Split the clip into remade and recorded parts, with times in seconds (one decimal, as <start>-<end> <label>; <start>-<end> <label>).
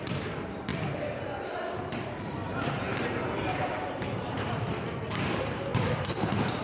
0.0-0.7 remade; 0.7-1.9 recorded; 1.9-2.4 remade; 2.4-3.0 recorded; 3.0-6.6 remade